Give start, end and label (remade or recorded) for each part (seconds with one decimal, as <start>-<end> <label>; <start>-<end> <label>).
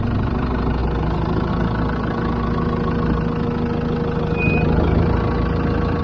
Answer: 0.0-6.0 recorded